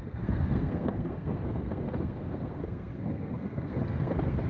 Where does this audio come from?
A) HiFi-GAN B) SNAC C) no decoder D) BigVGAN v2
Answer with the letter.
B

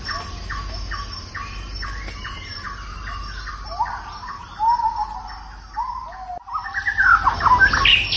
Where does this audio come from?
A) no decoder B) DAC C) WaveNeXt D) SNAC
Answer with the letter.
A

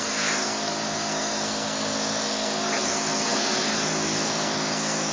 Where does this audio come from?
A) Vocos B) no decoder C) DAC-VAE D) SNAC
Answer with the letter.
D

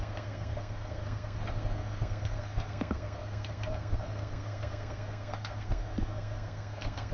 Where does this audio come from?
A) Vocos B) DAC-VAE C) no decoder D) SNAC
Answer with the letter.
D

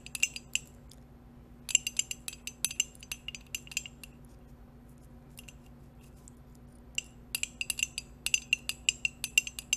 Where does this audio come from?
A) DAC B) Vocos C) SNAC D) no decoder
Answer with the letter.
D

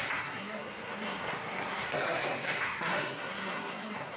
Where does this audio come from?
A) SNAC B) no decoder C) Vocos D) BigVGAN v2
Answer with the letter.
A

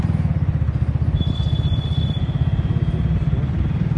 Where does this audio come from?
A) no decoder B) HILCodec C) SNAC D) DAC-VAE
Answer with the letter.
A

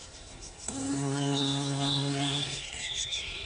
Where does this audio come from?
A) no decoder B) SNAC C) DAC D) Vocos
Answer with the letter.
B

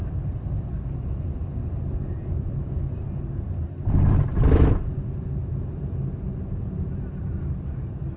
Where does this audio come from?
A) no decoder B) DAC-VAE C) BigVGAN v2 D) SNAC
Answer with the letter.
A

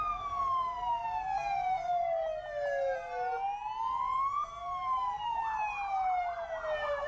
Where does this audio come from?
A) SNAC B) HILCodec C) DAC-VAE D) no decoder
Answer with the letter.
D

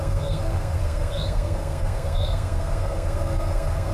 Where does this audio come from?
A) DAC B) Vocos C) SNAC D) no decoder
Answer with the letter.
C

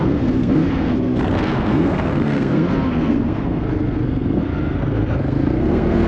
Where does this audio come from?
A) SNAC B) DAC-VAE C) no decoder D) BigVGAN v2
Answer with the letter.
A